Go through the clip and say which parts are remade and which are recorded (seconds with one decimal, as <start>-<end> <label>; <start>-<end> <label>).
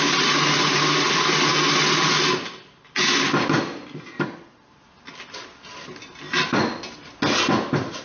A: 0.0-8.0 recorded